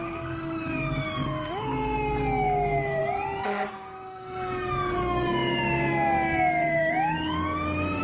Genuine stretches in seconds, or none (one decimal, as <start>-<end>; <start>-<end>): 3.0-3.7